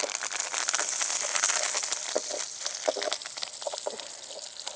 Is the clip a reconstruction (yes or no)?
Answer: no